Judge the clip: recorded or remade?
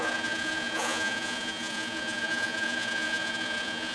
remade